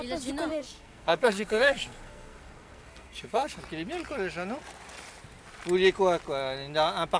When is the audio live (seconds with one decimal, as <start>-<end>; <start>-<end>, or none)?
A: 0.0-0.5; 3.6-7.2